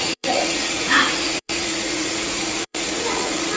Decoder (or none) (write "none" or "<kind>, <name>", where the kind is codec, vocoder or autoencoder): vocoder, Vocos